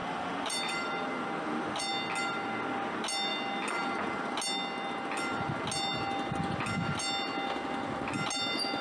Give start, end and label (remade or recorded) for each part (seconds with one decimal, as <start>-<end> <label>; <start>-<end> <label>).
0.0-1.8 remade; 1.8-8.8 recorded

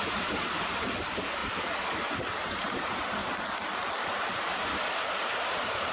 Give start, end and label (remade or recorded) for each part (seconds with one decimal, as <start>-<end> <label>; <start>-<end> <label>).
0.0-1.4 remade; 1.4-2.5 recorded; 2.5-3.2 remade; 3.2-5.0 recorded; 5.0-5.9 remade

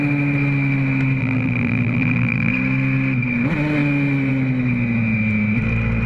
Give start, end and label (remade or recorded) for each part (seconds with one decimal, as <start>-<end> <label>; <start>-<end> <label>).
0.0-1.2 recorded; 1.2-2.5 remade; 2.5-6.1 recorded

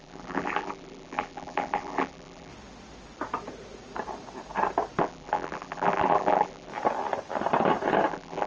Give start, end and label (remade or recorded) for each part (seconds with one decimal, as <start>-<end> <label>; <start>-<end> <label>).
0.0-2.5 remade; 2.5-5.0 recorded; 5.0-6.7 remade; 6.7-8.1 recorded; 8.1-8.5 remade

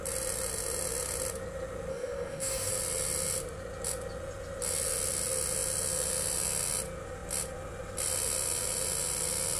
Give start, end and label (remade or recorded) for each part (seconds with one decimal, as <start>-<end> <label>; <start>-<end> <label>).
0.0-1.9 recorded; 1.9-2.7 remade; 2.7-9.6 recorded

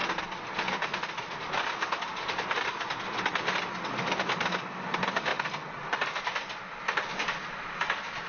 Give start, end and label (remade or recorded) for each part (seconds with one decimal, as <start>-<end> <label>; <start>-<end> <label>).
0.0-8.3 recorded